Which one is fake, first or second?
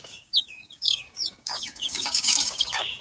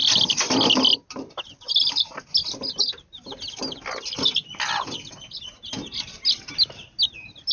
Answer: first